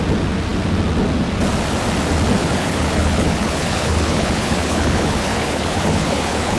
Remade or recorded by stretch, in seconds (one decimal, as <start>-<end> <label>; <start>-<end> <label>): 0.0-2.4 recorded; 2.4-6.6 remade